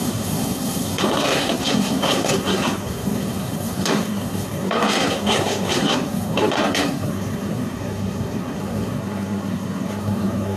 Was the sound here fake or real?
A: fake